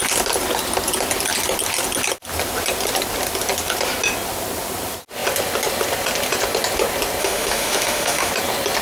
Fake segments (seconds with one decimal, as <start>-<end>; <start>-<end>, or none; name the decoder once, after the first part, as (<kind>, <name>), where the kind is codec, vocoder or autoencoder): 7.2-8.3 (autoencoder, DAC-VAE)